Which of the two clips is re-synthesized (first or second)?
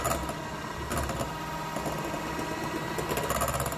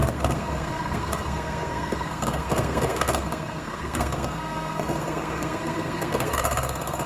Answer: second